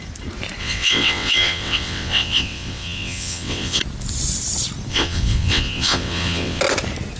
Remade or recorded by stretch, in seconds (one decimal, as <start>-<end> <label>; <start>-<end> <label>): 0.0-0.6 recorded; 0.6-3.8 remade; 3.8-4.9 recorded; 4.9-6.6 remade; 6.6-7.2 recorded